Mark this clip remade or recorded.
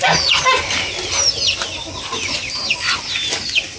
recorded